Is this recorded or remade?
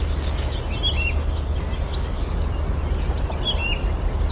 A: recorded